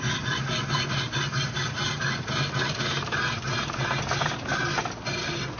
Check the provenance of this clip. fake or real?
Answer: real